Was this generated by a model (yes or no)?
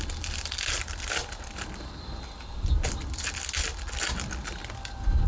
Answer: no